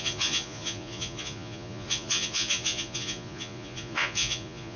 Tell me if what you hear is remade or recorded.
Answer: remade